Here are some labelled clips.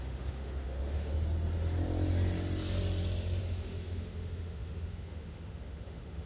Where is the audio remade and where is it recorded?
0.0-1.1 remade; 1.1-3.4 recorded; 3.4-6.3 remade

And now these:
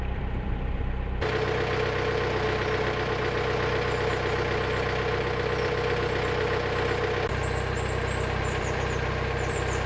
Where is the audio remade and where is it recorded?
0.0-7.4 remade; 7.4-8.4 recorded; 8.4-9.9 remade

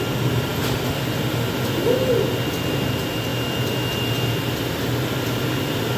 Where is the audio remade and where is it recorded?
0.0-6.0 recorded

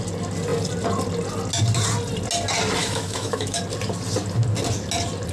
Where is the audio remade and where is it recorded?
0.0-2.8 recorded; 2.8-3.6 remade; 3.6-5.3 recorded

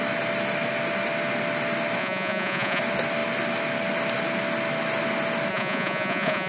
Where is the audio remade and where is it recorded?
0.0-2.0 recorded; 2.0-2.8 remade; 2.8-5.5 recorded; 5.5-6.5 remade

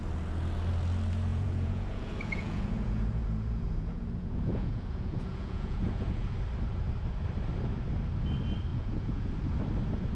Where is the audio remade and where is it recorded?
0.0-1.3 recorded; 1.3-6.4 remade; 6.4-8.7 recorded; 8.7-9.3 remade; 9.3-10.2 recorded

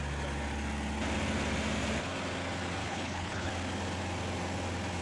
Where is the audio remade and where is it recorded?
0.0-2.8 recorded; 2.8-3.5 remade; 3.5-5.0 recorded